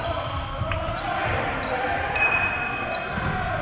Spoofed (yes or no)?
no